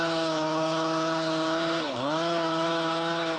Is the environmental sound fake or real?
fake